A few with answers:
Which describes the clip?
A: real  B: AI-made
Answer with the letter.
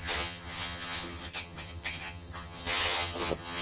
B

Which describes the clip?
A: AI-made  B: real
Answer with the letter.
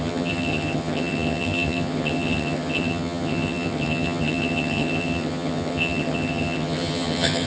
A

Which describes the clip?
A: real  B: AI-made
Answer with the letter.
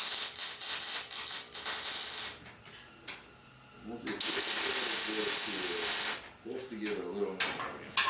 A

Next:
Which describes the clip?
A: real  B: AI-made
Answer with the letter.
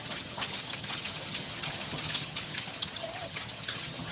B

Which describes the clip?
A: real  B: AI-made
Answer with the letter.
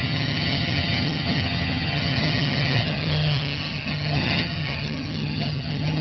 B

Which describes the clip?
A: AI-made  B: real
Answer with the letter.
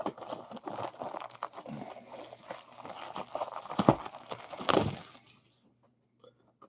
B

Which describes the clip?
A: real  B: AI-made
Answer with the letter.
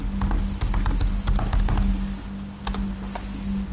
A